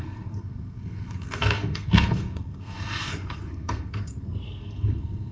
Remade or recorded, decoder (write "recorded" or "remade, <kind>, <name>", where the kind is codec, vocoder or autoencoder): remade, codec, SNAC